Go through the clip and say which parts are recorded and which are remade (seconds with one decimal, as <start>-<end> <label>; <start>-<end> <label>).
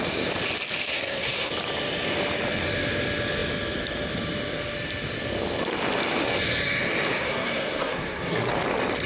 0.0-0.9 recorded; 0.9-1.5 remade; 1.5-7.1 recorded; 7.1-8.5 remade; 8.5-9.1 recorded